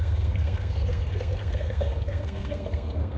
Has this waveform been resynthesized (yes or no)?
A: yes